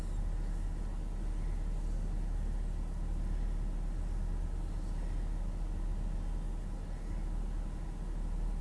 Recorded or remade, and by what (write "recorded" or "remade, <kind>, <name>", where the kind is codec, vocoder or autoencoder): recorded